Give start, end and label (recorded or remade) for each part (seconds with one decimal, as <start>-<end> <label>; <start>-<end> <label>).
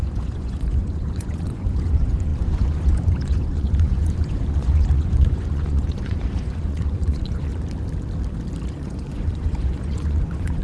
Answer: 0.0-7.5 remade; 7.5-8.7 recorded; 8.7-10.6 remade